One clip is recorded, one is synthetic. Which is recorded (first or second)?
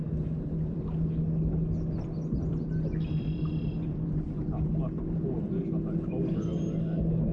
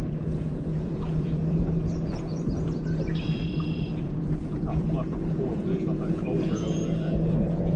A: first